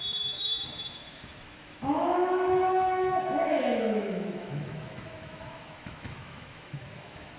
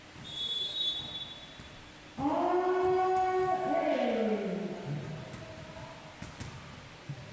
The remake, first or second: first